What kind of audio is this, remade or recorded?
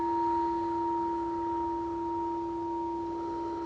recorded